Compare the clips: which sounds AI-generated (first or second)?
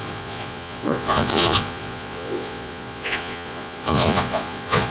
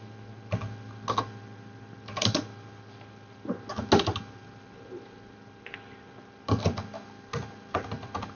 first